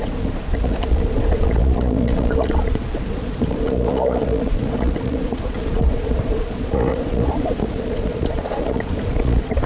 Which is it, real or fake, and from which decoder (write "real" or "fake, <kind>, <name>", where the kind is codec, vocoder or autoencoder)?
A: fake, vocoder, Vocos